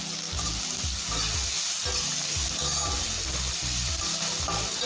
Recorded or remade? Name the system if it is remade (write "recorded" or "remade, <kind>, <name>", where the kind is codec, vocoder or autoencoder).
recorded